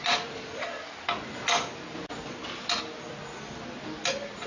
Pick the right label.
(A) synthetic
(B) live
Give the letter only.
B